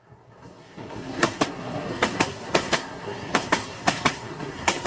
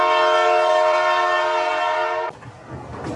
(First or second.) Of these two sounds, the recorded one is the second